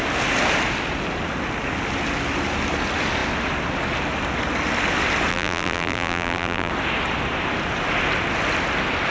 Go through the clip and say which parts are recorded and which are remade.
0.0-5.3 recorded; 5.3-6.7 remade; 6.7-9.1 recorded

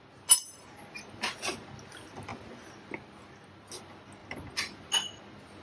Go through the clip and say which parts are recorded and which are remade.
0.0-5.6 recorded